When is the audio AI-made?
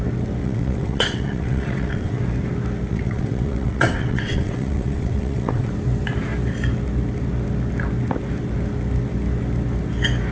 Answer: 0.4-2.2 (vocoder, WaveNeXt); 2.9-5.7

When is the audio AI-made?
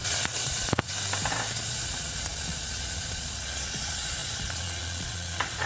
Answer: 0.0-0.9 (vocoder, Vocos); 1.5-5.7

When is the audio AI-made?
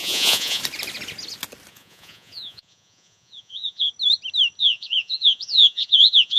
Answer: 0.0-0.6 (vocoder, Vocos); 1.7-3.9; 4.6-6.4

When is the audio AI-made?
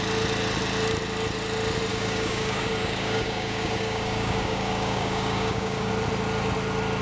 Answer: 1.9-5.9 (codec, DAC)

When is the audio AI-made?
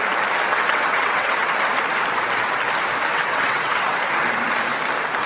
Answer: 0.5-1.5 (vocoder, WaveNeXt); 3.1-4.1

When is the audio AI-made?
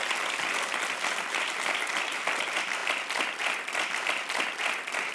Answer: none